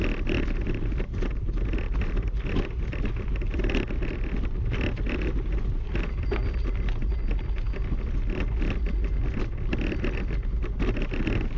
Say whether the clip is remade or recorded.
recorded